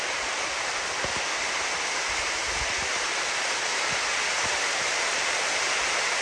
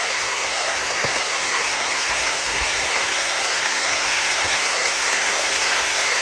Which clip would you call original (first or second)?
first